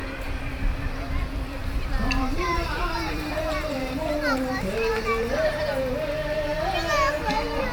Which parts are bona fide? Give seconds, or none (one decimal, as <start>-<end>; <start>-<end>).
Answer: 0.0-1.6; 5.6-7.7